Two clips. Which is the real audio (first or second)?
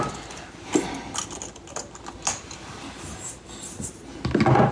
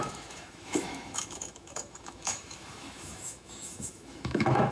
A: first